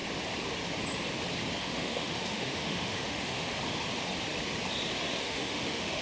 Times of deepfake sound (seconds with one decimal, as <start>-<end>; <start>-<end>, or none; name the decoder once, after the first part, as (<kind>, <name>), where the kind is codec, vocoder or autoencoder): 1.6-3.5 (autoencoder, DAC-VAE); 5.2-6.0